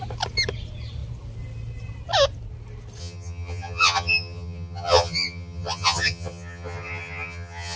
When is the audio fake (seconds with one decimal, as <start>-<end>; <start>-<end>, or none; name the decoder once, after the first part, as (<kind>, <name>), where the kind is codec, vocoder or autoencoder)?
3.0-7.8 (vocoder, HiFi-GAN)